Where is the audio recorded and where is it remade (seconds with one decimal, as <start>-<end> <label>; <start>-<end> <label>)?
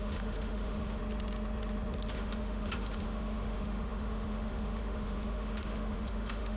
0.0-1.0 remade; 1.0-2.1 recorded; 2.1-6.6 remade